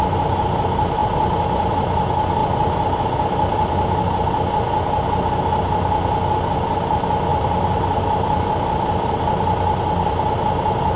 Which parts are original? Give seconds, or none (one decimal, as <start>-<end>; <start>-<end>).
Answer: 0.0-1.0; 1.7-2.4; 4.0-7.3; 9.1-11.0